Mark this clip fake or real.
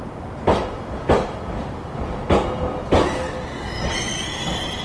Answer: real